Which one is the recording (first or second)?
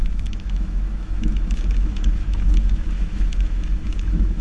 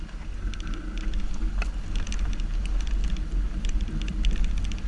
second